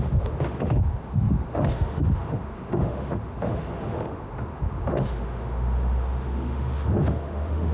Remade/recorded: remade